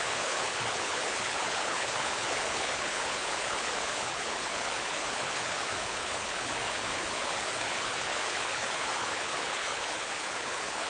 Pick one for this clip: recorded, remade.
remade